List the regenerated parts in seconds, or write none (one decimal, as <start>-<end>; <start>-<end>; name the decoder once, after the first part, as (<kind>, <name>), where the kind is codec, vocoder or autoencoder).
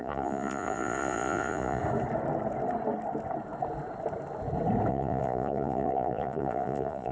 0.0-1.8 (vocoder, Vocos); 4.9-7.1